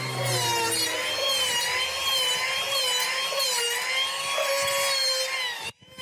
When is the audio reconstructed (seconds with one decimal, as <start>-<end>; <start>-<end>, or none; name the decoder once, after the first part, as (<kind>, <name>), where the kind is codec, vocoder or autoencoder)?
none